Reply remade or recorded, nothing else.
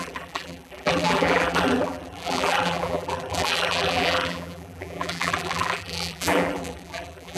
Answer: remade